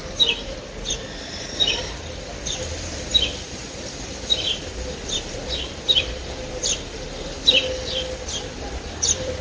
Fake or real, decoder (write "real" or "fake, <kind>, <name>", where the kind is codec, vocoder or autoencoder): fake, vocoder, BigVGAN v2